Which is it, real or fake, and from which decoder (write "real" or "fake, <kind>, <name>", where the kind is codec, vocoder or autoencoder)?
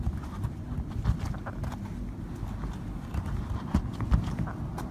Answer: real